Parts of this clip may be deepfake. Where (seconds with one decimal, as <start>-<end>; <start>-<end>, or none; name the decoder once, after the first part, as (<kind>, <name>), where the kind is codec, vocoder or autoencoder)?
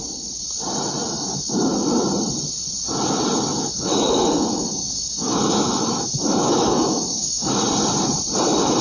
1.0-1.7 (autoencoder, DAC-VAE); 3.5-7.5